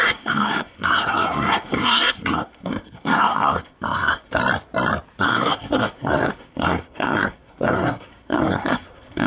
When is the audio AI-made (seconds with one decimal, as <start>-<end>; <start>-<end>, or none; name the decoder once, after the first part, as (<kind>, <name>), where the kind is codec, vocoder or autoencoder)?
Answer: 0.0-4.4 (codec, SNAC); 5.2-9.3